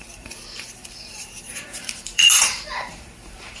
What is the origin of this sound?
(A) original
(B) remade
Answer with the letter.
B